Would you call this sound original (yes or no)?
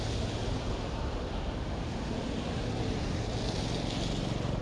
yes